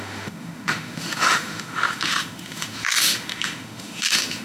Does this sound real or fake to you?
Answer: fake